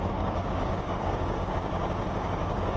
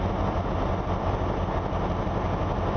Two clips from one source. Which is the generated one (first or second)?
first